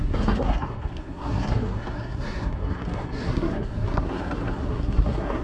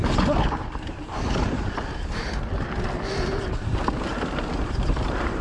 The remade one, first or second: first